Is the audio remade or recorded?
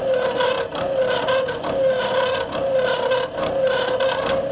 recorded